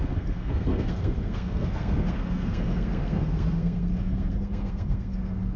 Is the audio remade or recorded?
remade